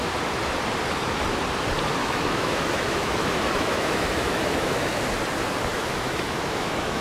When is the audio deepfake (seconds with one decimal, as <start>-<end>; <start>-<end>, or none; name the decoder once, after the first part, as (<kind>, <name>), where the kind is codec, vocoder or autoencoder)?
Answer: 2.0-5.0 (autoencoder, DAC-VAE); 5.7-7.0